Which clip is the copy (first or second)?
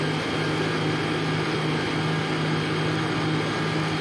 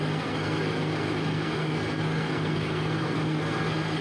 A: second